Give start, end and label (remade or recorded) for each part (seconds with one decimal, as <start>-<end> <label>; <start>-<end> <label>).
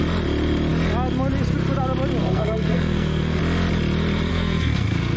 0.0-2.2 recorded; 2.2-3.4 remade; 3.4-4.3 recorded; 4.3-5.2 remade